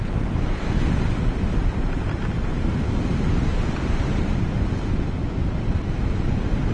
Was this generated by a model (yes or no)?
no